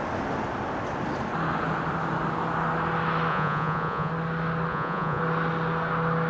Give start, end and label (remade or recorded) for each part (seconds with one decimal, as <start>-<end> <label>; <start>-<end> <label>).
0.0-3.3 recorded; 3.3-4.1 remade; 4.1-4.7 recorded; 4.7-5.2 remade; 5.2-6.3 recorded

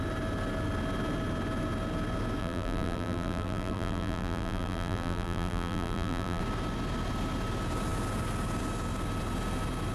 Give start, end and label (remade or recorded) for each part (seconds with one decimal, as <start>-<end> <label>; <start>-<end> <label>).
0.0-2.4 recorded; 2.4-6.4 remade; 6.4-9.9 recorded

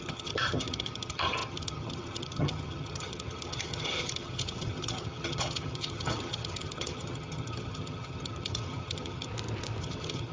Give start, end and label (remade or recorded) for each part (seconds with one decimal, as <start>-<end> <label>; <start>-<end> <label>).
0.0-9.3 remade; 9.3-9.8 recorded; 9.8-10.3 remade

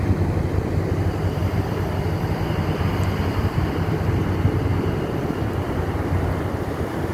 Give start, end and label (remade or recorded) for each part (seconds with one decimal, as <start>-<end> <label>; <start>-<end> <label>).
0.0-1.4 recorded; 1.4-4.1 remade; 4.1-4.7 recorded; 4.7-7.1 remade

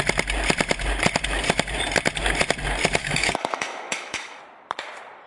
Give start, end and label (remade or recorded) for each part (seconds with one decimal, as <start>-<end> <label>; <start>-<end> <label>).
0.0-3.0 recorded; 3.0-4.4 remade; 4.4-5.3 recorded